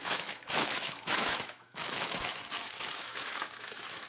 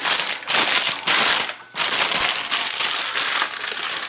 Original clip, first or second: second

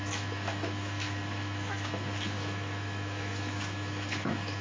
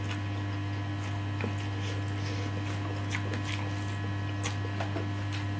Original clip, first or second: second